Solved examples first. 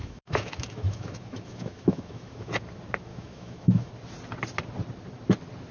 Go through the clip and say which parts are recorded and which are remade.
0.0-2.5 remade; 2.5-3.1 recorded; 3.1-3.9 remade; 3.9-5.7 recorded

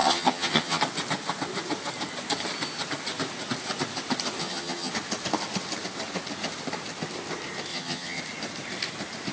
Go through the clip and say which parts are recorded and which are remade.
0.0-0.8 remade; 0.8-4.4 recorded; 4.4-4.9 remade; 4.9-7.7 recorded; 7.7-8.2 remade; 8.2-9.3 recorded

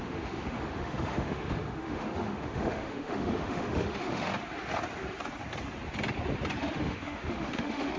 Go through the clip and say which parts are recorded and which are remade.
0.0-4.3 remade; 4.3-6.7 recorded; 6.7-8.0 remade

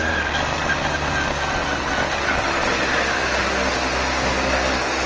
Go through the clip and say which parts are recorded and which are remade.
0.0-5.1 recorded

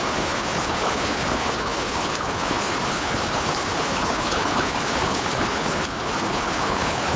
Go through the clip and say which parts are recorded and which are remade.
0.0-7.2 remade

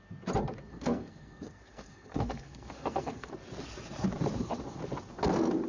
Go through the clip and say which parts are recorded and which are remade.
0.0-0.7 recorded; 0.7-3.3 remade; 3.3-5.7 recorded